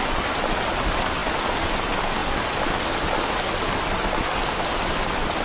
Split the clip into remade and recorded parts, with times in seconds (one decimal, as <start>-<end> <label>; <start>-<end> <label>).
0.0-5.4 recorded